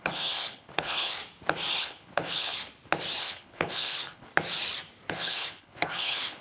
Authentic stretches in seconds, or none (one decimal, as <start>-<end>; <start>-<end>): 1.2-1.8; 2.5-3.2; 4.3-5.1

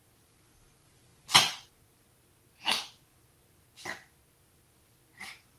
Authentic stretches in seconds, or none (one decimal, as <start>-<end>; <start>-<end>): 0.0-5.6

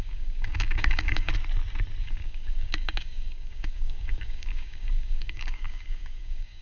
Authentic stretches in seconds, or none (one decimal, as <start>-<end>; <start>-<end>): 1.3-2.0

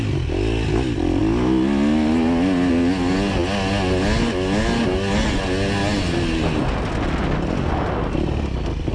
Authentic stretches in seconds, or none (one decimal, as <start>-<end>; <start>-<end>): 0.0-8.9